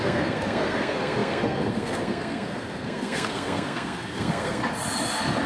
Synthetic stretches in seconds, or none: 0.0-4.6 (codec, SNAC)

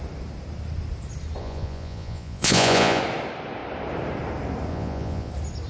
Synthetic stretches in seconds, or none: 1.4-3.0 (vocoder, Vocos); 4.7-5.3

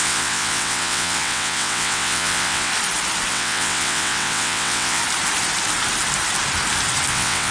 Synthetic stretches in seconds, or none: 0.0-2.7 (vocoder, WaveNeXt); 3.3-5.0; 7.1-7.5